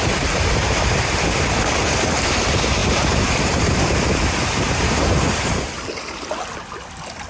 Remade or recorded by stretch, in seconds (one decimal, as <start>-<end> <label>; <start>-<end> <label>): 0.0-0.9 remade; 0.9-2.8 recorded; 2.8-5.7 remade; 5.7-7.3 recorded